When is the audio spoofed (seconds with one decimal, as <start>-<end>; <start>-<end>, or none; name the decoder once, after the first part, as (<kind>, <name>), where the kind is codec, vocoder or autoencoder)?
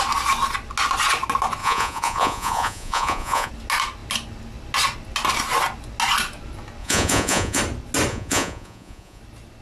1.6-3.5 (vocoder, Vocos); 6.8-7.6; 8.1-9.2